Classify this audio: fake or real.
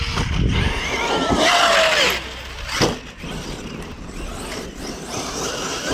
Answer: real